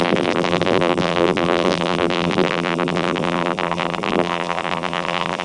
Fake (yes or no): yes